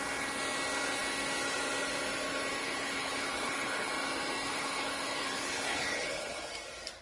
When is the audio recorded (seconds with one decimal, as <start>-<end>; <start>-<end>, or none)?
0.0-2.6; 3.9-4.5; 6.4-7.0